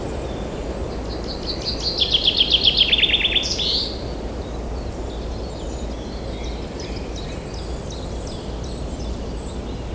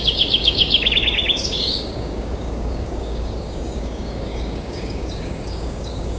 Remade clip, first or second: second